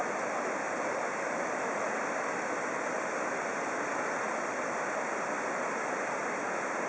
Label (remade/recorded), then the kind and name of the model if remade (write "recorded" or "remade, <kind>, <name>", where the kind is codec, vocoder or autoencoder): recorded